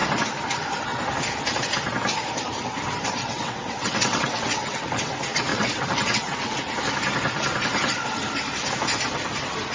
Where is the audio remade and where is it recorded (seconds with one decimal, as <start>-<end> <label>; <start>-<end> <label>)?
0.0-3.2 recorded; 3.2-5.1 remade; 5.1-5.5 recorded; 5.5-6.6 remade; 6.6-9.7 recorded